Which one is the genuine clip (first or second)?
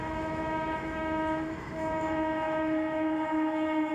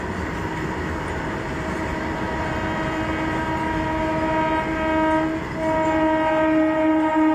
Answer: second